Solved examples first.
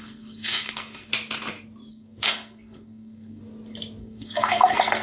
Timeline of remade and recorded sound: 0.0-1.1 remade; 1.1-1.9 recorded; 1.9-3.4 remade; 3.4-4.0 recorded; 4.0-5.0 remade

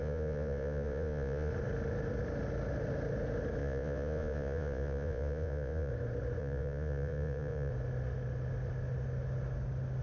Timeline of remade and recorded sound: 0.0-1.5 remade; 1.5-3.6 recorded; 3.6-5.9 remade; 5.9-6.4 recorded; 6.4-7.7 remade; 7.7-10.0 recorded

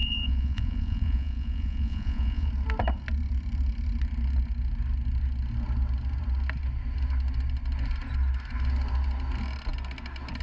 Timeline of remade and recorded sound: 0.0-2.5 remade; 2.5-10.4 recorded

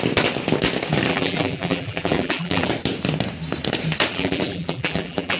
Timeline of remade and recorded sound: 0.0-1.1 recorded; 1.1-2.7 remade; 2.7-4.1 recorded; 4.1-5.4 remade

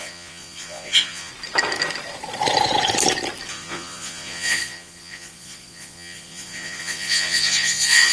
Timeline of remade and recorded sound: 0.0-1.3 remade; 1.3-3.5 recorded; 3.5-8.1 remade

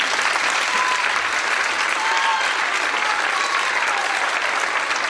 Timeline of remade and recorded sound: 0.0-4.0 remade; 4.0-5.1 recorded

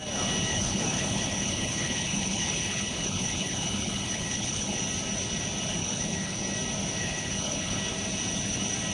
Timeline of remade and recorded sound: 0.0-0.5 recorded; 0.5-4.8 remade; 4.8-5.8 recorded; 5.8-6.4 remade; 6.4-7.0 recorded; 7.0-7.8 remade; 7.8-8.9 recorded

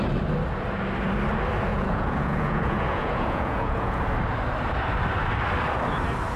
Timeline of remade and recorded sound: 0.0-1.7 recorded; 1.7-4.0 remade; 4.0-6.4 recorded